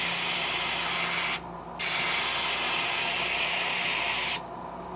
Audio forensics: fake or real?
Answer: real